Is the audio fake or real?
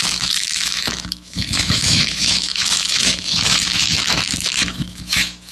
fake